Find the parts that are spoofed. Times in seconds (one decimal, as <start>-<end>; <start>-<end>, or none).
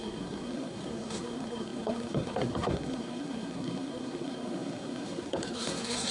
0.0-6.1